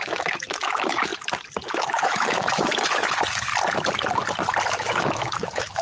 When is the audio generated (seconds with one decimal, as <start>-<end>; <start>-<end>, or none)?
0.0-1.1; 1.7-3.5; 4.7-5.8